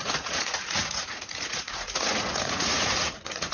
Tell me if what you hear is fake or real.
fake